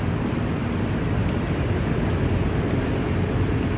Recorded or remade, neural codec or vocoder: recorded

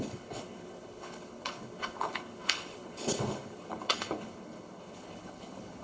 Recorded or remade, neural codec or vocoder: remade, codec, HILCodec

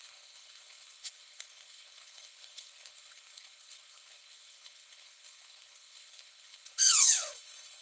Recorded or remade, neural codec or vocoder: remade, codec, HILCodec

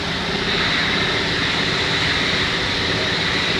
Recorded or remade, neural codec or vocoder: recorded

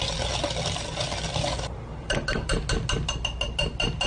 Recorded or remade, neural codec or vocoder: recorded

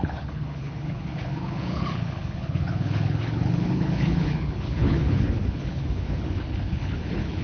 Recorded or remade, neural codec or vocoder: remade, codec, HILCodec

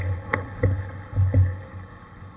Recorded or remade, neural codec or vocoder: remade, codec, HILCodec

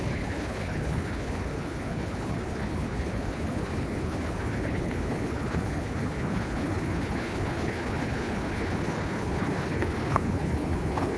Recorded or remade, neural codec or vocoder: remade, codec, HILCodec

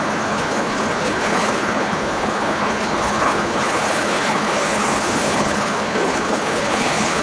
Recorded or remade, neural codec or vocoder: remade, codec, HILCodec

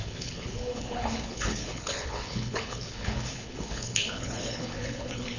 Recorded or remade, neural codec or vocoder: remade, codec, HILCodec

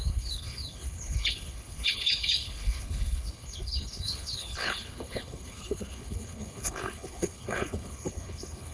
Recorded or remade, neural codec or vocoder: remade, codec, HILCodec